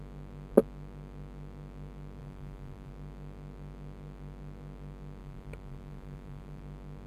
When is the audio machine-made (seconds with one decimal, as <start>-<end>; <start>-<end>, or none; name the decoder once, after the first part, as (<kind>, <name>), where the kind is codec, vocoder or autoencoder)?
2.2-2.9 (vocoder, BigVGAN v2); 5.2-6.6